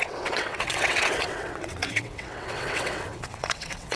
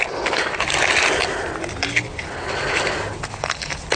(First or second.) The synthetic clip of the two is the first